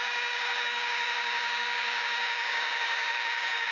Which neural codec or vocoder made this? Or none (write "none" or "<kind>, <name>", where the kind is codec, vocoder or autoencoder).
codec, DAC